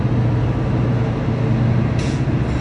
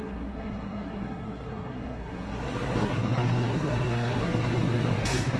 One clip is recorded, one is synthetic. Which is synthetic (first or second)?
second